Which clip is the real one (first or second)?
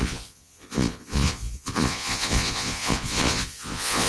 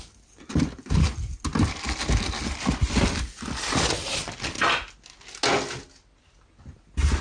second